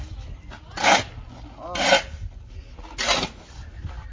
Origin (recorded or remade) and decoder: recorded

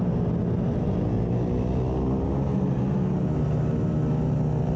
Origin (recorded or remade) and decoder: recorded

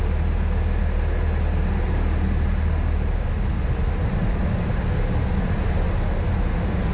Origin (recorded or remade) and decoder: recorded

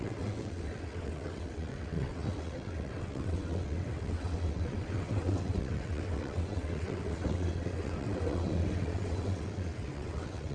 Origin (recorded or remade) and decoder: remade, vocoder, WaveNeXt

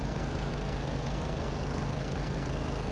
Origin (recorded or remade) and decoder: remade, codec, SNAC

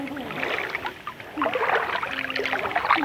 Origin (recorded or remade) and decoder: recorded